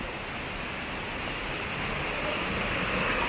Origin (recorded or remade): recorded